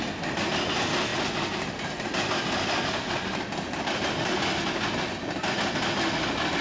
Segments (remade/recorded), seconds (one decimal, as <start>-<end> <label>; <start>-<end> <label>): 0.0-6.6 recorded